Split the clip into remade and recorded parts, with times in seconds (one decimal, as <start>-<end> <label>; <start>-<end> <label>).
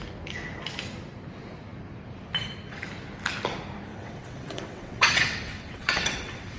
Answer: 0.0-3.9 recorded; 3.9-6.6 remade